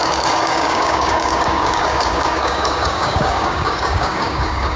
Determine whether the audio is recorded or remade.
remade